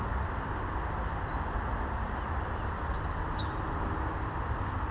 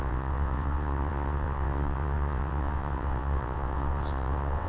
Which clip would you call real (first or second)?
first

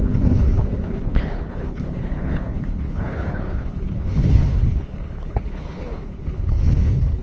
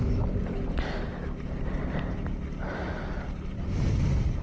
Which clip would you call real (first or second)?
second